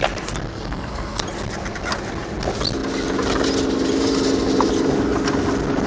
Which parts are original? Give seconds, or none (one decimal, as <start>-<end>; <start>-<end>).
0.0-0.5; 1.2-5.9